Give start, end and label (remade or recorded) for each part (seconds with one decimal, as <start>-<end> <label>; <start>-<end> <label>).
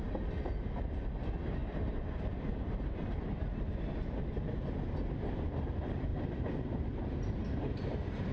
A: 0.0-1.6 recorded; 1.6-3.9 remade; 3.9-6.1 recorded; 6.1-8.3 remade